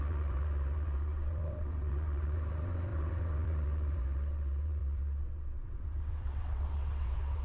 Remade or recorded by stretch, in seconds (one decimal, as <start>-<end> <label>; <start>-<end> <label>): 0.0-7.4 remade